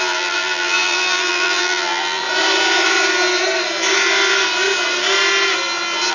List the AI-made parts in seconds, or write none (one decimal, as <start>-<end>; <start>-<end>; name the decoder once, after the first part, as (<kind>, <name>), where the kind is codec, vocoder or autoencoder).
0.0-2.2 (vocoder, BigVGAN v2)